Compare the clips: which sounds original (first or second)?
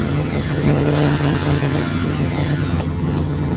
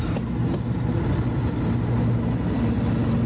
second